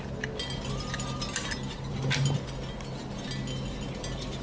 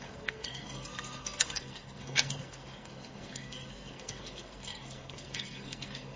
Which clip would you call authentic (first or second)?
first